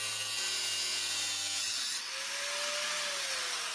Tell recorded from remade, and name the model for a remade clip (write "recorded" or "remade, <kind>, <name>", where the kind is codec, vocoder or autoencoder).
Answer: recorded